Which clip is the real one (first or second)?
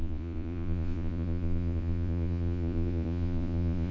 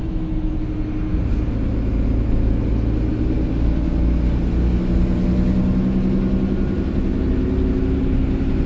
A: second